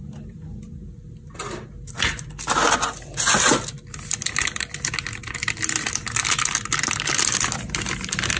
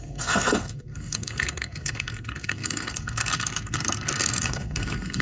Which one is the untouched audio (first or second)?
first